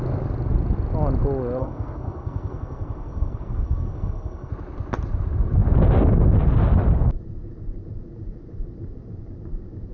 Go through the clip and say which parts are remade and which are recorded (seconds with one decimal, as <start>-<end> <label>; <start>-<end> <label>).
0.0-1.6 recorded; 1.6-4.5 remade; 4.5-9.9 recorded